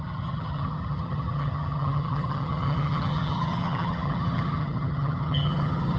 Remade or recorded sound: remade